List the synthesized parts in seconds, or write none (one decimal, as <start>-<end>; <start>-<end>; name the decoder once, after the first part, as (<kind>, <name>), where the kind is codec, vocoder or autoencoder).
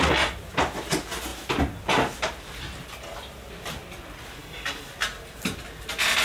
4.4-4.9 (codec, DAC)